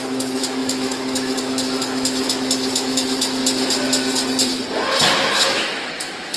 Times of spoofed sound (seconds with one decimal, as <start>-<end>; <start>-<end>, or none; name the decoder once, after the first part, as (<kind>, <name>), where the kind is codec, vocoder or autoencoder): 0.0-3.4 (autoencoder, DAC-VAE); 5.0-6.4